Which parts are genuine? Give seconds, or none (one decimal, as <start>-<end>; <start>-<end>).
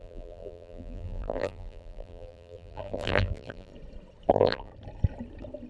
3.7-4.3; 4.7-5.7